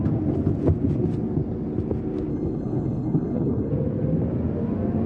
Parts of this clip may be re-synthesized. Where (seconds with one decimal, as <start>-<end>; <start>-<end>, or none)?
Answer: 2.3-3.7